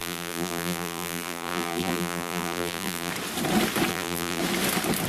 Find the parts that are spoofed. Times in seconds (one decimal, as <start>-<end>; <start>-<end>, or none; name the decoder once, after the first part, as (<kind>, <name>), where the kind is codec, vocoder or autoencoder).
0.0-3.1 (vocoder, BigVGAN v2); 3.9-4.4